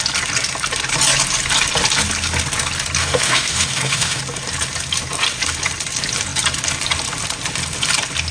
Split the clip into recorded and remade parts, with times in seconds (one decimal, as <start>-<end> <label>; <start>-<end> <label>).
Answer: 0.0-3.0 recorded; 3.0-4.2 remade; 4.2-8.3 recorded